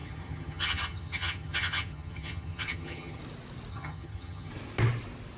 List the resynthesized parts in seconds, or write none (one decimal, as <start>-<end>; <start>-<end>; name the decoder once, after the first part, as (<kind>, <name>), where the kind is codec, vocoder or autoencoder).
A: 0.0-3.2 (vocoder, HiFi-GAN); 3.7-4.5